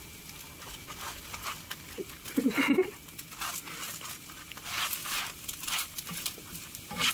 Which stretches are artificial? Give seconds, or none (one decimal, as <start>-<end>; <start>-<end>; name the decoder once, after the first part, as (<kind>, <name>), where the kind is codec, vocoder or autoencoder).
5.0-7.1 (vocoder, BigVGAN v2)